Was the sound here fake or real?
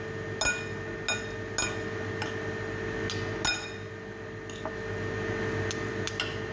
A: real